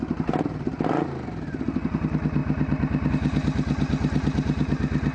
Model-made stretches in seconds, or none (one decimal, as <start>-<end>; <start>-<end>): none